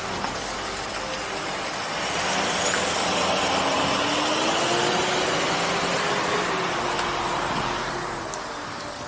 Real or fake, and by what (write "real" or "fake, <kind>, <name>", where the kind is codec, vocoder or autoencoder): real